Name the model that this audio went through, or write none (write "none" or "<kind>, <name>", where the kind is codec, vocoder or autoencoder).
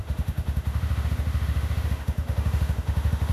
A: autoencoder, DAC-VAE